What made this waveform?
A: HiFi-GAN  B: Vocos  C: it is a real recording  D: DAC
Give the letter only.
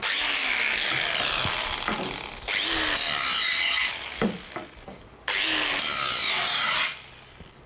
C